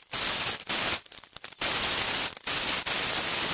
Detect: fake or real real